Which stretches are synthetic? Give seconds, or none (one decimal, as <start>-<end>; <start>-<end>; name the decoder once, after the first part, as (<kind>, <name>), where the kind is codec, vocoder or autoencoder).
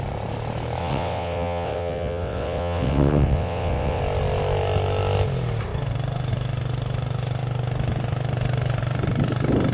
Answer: 0.8-4.0 (vocoder, WaveNeXt)